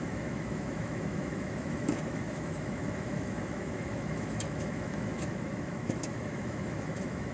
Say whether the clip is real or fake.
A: fake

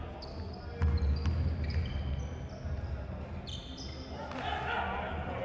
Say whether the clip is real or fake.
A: real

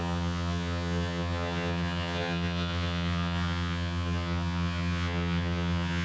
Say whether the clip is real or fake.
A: fake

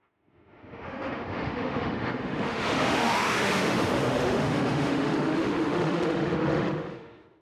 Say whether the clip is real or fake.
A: fake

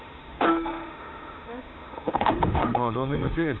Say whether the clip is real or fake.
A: fake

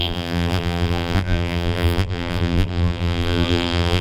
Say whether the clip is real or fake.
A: fake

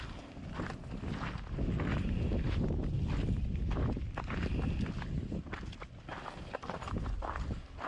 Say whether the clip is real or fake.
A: real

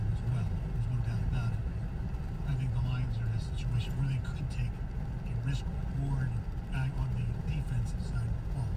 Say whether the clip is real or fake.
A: real